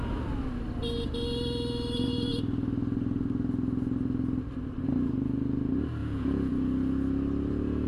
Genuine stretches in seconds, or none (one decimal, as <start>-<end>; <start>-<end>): 0.0-6.0; 6.5-7.9